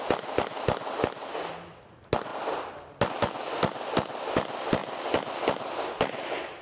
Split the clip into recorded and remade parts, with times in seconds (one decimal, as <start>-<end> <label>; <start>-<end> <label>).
0.0-6.6 recorded